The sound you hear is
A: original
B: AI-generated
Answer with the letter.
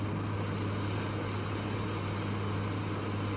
A